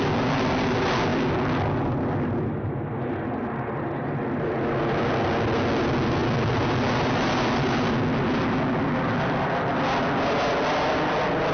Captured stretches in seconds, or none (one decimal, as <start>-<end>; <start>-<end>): 0.0-11.5